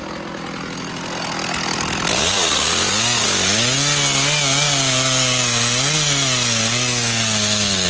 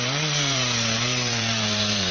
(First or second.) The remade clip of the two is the second